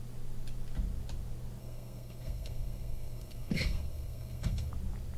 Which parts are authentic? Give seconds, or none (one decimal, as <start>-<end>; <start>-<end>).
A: 0.0-1.6; 4.7-5.2